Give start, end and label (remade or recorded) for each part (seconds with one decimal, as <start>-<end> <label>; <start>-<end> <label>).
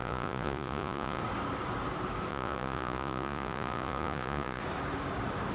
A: 0.0-1.2 remade; 1.2-2.3 recorded; 2.3-4.6 remade; 4.6-5.5 recorded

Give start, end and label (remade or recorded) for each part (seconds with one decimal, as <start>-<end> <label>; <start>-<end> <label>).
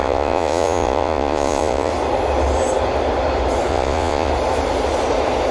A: 0.0-1.9 remade; 1.9-3.7 recorded; 3.7-4.3 remade; 4.3-5.5 recorded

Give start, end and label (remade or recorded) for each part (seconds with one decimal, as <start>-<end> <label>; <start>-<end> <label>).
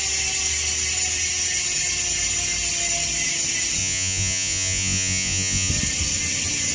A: 0.0-3.8 recorded; 3.8-5.7 remade; 5.7-6.7 recorded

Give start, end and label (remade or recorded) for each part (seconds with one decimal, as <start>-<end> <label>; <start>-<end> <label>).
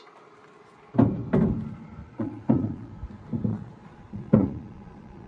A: 0.0-2.0 recorded; 2.0-2.9 remade; 2.9-3.5 recorded; 3.5-5.3 remade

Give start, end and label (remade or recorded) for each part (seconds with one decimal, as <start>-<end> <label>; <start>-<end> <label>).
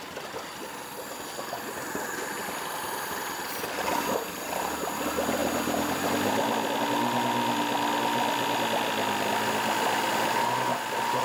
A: 0.0-11.2 recorded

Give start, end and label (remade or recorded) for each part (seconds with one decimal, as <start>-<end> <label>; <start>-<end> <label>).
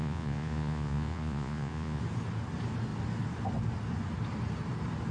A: 0.0-2.0 remade; 2.0-5.1 recorded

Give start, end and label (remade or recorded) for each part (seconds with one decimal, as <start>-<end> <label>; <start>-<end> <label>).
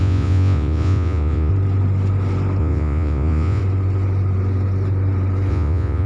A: 0.0-1.5 remade; 1.5-2.6 recorded; 2.6-3.6 remade; 3.6-5.5 recorded; 5.5-6.1 remade